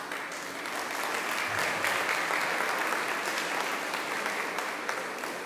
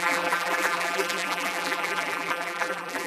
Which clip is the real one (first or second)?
first